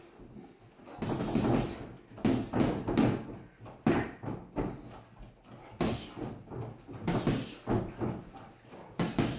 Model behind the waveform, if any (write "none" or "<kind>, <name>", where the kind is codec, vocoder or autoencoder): none